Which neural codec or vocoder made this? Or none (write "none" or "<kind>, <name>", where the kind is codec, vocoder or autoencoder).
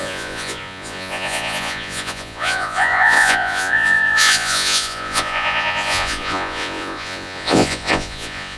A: vocoder, Vocos